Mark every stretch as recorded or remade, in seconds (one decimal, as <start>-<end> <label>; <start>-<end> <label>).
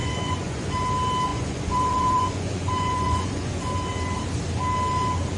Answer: 0.0-0.7 remade; 0.7-1.3 recorded; 1.3-3.6 remade; 3.6-5.4 recorded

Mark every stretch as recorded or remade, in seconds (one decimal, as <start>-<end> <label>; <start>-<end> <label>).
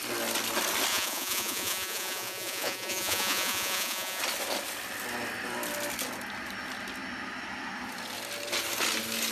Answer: 0.0-0.9 recorded; 0.9-4.2 remade; 4.2-9.3 recorded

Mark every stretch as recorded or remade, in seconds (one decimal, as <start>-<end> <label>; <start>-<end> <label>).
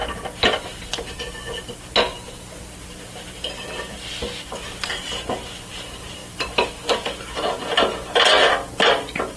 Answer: 0.0-9.4 recorded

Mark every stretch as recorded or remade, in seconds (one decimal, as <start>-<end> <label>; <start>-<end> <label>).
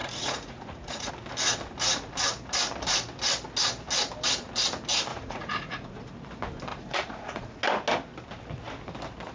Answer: 0.0-1.1 remade; 1.1-5.1 recorded; 5.1-6.1 remade; 6.1-6.7 recorded; 6.7-7.6 remade; 7.6-9.3 recorded